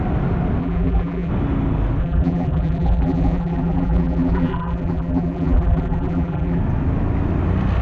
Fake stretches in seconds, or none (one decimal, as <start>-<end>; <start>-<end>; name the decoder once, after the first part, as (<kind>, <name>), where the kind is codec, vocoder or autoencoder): 0.6-1.3 (vocoder, BigVGAN v2); 2.0-6.6